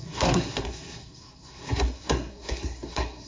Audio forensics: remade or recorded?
remade